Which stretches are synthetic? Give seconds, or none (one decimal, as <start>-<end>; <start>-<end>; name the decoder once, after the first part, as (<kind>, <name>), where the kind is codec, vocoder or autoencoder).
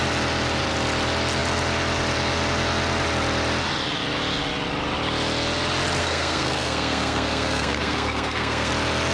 6.0-8.7 (codec, SNAC)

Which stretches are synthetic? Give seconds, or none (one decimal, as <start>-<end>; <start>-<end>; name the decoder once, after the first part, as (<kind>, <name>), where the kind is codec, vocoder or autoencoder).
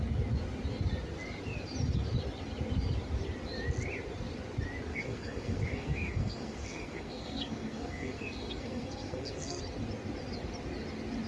4.9-9.6 (codec, SNAC)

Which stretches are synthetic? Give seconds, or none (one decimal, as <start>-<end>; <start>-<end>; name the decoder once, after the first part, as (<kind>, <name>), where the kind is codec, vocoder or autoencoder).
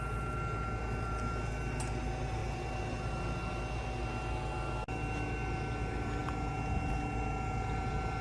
none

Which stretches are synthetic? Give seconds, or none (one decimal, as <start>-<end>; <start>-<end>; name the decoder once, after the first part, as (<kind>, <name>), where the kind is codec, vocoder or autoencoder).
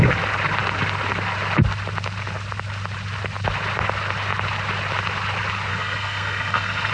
5.7-6.9 (codec, SNAC)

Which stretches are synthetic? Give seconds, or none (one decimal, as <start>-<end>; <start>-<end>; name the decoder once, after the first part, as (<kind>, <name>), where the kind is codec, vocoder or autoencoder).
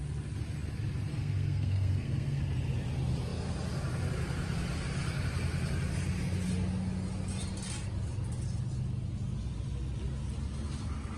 1.1-2.4 (codec, SNAC)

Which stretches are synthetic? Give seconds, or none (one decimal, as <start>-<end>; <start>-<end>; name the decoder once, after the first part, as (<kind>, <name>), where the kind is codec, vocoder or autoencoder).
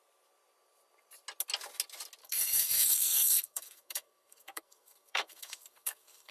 2.2-6.3 (codec, SNAC)